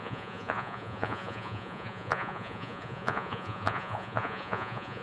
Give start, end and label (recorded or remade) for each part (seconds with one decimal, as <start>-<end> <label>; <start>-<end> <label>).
0.0-5.0 remade